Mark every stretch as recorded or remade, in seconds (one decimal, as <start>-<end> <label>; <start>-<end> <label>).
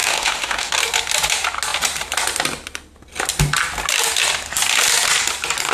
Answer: 0.0-0.7 remade; 0.7-5.7 recorded